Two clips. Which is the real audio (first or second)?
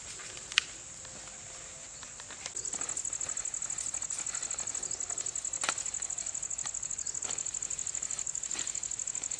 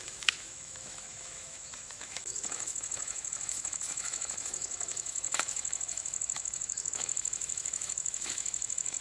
first